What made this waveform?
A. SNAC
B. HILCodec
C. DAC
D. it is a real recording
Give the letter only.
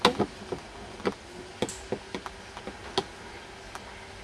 D